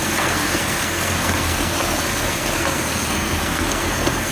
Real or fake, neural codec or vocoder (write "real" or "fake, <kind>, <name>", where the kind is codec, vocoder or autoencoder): fake, codec, SNAC